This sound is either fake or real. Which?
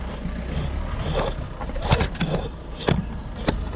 real